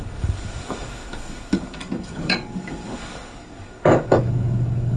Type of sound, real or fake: fake